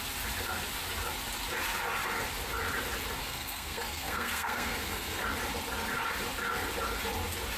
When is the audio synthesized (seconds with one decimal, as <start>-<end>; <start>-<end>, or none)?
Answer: 3.2-5.2